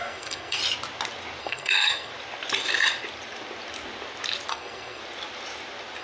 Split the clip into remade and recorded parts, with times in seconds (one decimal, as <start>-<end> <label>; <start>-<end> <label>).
0.0-0.6 remade; 0.6-1.4 recorded; 1.4-2.1 remade; 2.1-4.5 recorded; 4.5-5.0 remade; 5.0-6.0 recorded